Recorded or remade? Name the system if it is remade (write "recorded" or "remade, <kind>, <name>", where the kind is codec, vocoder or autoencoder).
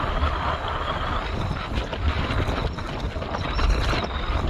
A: recorded